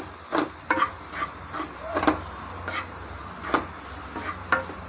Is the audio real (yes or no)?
yes